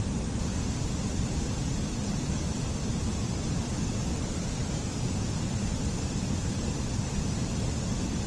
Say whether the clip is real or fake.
real